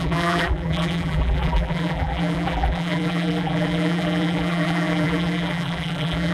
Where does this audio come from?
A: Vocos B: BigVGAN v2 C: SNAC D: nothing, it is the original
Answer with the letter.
B